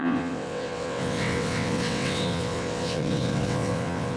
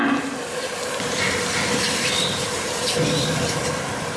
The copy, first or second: first